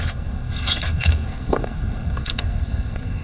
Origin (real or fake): fake